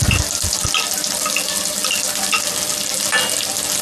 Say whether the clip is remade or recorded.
recorded